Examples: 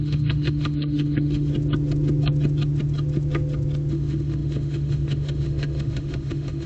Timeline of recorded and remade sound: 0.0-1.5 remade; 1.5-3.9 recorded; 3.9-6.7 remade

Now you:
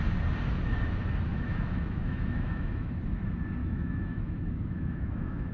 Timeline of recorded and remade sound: 0.0-1.3 recorded; 1.3-2.9 remade; 2.9-3.6 recorded; 3.6-5.5 remade

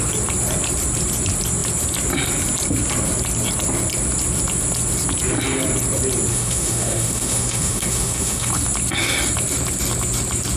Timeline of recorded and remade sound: 0.0-6.3 recorded; 6.3-8.5 remade; 8.5-10.6 recorded